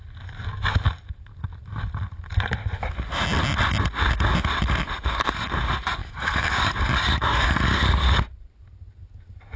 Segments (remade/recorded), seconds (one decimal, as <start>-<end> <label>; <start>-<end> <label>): 0.0-6.0 recorded; 6.0-6.6 remade; 6.6-9.6 recorded